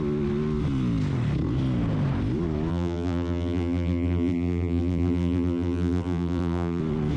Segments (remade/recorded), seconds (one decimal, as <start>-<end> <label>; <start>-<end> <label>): 0.0-2.7 recorded; 2.7-6.8 remade; 6.8-7.2 recorded